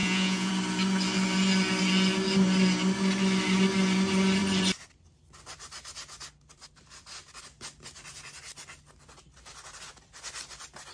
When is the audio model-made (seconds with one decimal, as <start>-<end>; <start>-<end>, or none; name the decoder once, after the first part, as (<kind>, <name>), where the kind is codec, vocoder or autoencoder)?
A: 0.0-0.5 (vocoder, Vocos)